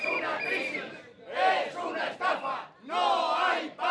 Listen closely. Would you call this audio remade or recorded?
recorded